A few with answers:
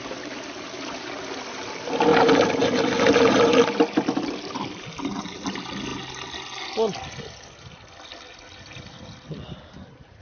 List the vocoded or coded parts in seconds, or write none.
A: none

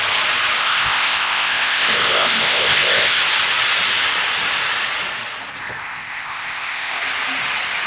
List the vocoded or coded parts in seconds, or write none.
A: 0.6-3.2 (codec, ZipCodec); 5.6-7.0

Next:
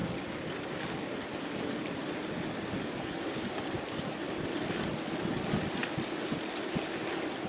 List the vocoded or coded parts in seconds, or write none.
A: none

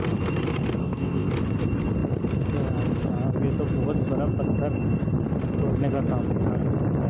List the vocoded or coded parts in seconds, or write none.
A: 0.8-1.3 (codec, ZipCodec)

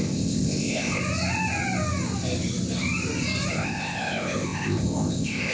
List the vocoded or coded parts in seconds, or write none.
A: 0.0-1.0 (codec, ZipCodec); 3.5-5.5